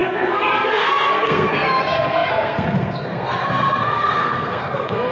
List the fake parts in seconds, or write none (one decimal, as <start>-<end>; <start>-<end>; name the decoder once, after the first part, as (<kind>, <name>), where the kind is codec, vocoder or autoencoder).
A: 0.0-5.1 (codec, SNAC)